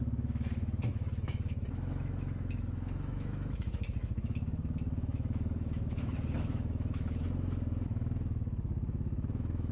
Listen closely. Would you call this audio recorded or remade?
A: remade